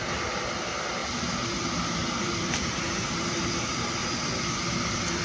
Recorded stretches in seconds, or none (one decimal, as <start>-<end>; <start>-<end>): 0.0-2.0; 3.5-5.2